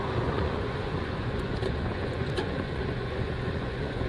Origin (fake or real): fake